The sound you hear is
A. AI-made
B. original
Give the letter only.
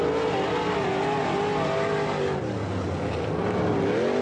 B